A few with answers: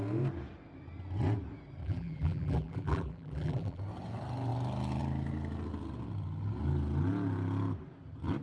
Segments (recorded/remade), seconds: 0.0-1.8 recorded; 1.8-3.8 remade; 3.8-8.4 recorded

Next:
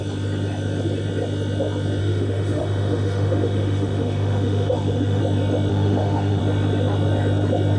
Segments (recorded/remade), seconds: 0.0-2.0 recorded; 2.0-5.2 remade; 5.2-5.7 recorded; 5.7-6.4 remade; 6.4-7.8 recorded

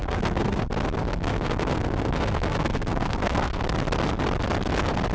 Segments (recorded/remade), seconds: 0.0-0.6 remade; 0.6-1.1 recorded; 1.1-3.6 remade; 3.6-5.1 recorded

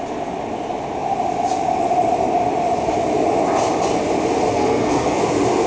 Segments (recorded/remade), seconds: 0.0-4.5 recorded; 4.5-5.2 remade; 5.2-5.7 recorded

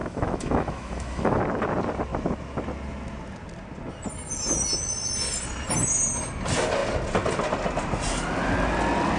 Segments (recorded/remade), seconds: 0.0-1.4 remade; 1.4-9.2 recorded

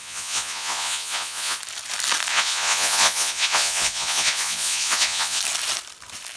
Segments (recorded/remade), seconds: 0.0-1.6 remade; 1.6-2.3 recorded; 2.3-5.4 remade; 5.4-6.4 recorded